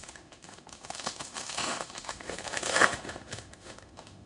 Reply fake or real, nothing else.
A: fake